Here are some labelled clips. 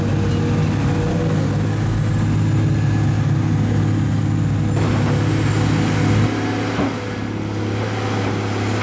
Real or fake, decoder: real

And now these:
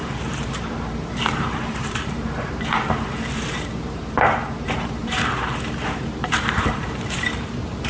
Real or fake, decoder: fake, vocoder, BigVGAN v2